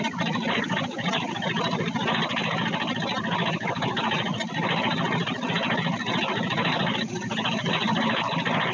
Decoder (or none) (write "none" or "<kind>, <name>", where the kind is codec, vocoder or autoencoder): none